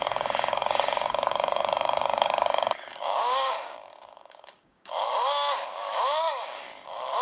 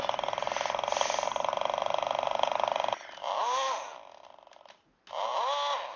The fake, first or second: first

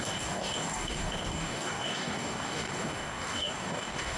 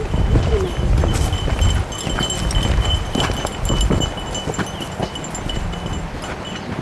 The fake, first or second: first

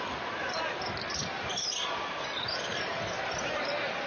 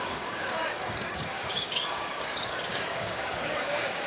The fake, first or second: second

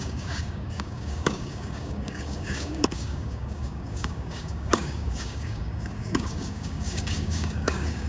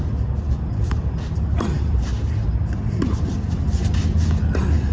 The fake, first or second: first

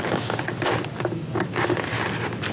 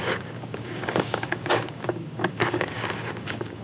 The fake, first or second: second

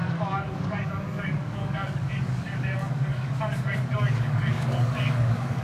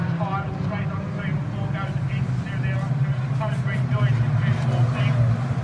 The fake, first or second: first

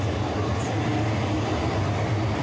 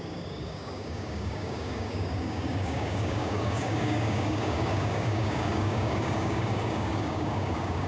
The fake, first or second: second